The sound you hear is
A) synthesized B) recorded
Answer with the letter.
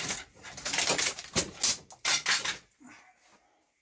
B